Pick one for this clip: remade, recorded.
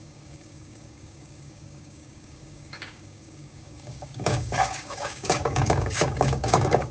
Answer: remade